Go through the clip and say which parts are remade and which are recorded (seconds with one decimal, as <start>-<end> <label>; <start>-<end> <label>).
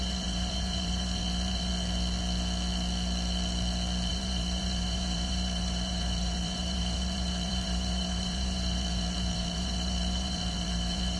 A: 0.0-1.7 remade; 1.7-4.1 recorded; 4.1-11.2 remade